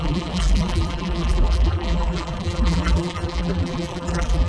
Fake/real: fake